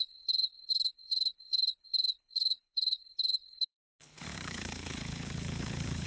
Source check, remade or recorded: remade